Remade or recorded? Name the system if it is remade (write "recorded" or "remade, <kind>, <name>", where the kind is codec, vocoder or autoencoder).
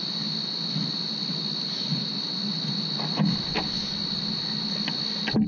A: recorded